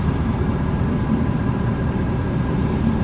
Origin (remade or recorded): remade